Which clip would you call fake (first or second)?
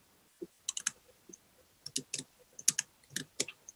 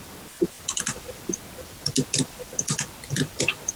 second